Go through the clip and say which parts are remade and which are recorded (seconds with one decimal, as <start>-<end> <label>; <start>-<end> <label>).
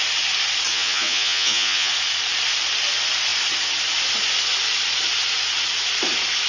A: 0.0-0.7 recorded; 0.7-1.9 remade; 1.9-6.5 recorded